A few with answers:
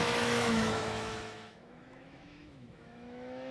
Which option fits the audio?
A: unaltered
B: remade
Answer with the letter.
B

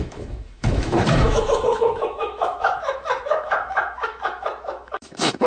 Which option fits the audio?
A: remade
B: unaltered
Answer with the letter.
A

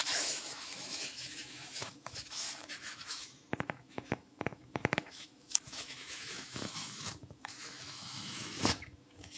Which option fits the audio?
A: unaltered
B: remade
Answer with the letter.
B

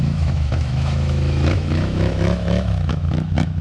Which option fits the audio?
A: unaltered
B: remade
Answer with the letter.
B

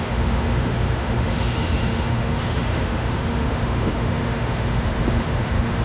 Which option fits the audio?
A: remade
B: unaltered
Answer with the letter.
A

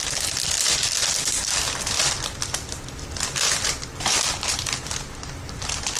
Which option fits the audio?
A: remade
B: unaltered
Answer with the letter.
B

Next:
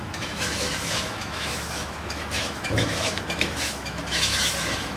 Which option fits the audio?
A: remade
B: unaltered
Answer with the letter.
A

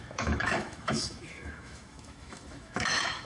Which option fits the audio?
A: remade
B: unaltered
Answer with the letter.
A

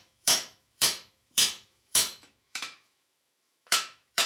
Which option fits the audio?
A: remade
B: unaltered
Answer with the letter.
A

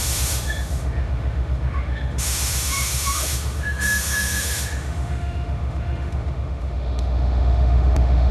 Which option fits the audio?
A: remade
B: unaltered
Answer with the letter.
A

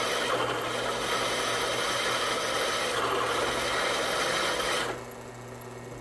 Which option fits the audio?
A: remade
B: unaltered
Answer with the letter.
B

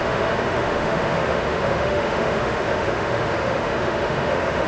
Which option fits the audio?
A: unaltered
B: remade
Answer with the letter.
B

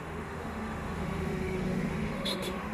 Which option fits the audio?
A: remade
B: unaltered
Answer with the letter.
A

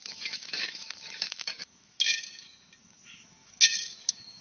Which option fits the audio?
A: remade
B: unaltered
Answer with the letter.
A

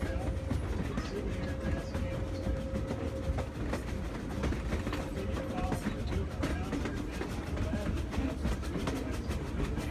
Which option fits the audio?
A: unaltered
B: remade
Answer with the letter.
A